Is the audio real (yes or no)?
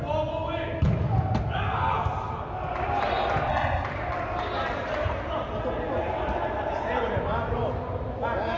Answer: yes